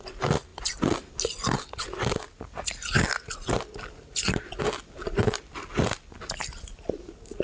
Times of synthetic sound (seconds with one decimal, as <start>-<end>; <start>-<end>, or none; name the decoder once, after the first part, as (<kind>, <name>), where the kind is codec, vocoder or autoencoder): none

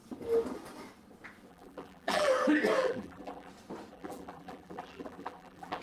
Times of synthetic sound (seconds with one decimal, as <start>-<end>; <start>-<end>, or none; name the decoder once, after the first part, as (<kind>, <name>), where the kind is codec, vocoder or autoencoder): 1.5-2.3 (vocoder, BigVGAN v2); 2.8-3.5; 3.9-5.8